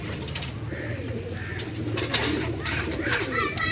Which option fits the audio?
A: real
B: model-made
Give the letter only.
A